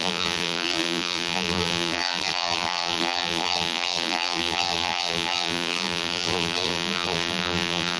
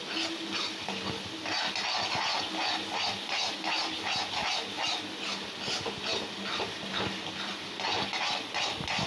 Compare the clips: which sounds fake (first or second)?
first